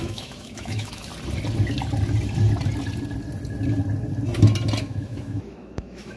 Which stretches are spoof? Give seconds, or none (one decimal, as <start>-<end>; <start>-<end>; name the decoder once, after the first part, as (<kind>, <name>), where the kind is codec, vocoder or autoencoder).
0.0-1.1 (autoencoder, DAC-VAE); 4.8-6.2